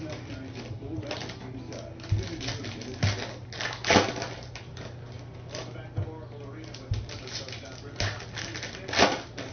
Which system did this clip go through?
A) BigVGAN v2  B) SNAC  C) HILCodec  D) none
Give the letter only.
D